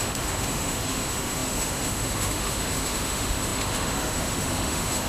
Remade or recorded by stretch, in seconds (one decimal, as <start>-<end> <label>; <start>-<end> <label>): 0.0-5.1 remade